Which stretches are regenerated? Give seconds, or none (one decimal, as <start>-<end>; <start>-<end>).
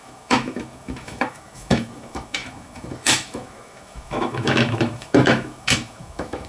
0.0-6.5